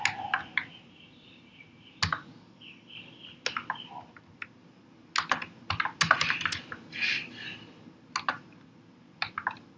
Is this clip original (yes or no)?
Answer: yes